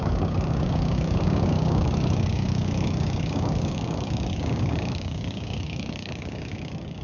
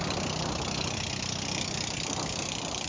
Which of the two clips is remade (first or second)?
first